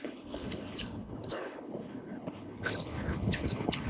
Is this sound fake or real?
fake